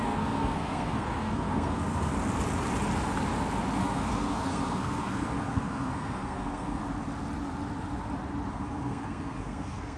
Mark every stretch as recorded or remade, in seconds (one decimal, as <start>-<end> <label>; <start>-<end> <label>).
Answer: 0.0-2.1 remade; 2.1-3.8 recorded; 3.8-6.8 remade; 6.8-8.5 recorded; 8.5-10.0 remade